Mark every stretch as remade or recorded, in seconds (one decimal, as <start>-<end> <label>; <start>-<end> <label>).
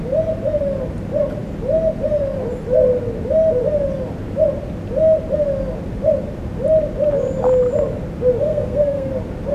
0.0-8.4 recorded; 8.4-9.1 remade; 9.1-9.5 recorded